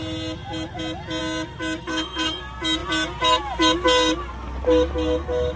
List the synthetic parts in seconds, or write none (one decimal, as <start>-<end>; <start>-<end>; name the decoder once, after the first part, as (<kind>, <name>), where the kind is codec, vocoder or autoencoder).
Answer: 1.8-2.4 (codec, SNAC)